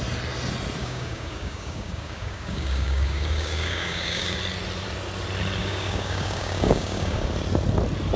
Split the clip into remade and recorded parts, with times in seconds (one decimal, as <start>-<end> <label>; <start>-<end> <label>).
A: 0.0-0.8 recorded; 0.8-4.4 remade; 4.4-5.6 recorded; 5.6-7.3 remade; 7.3-8.2 recorded